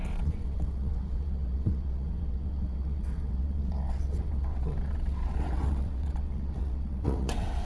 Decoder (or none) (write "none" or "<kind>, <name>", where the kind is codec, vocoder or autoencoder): vocoder, WaveNeXt